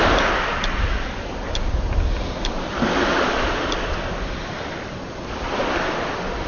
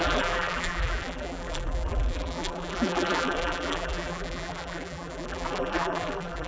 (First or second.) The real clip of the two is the first